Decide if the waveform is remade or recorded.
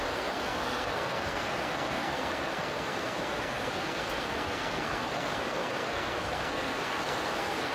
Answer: remade